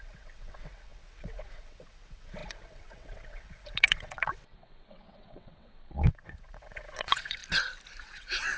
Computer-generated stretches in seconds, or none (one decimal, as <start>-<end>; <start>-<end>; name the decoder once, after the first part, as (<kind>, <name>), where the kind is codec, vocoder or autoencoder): 0.0-7.4 (vocoder, WaveNeXt); 8.0-8.6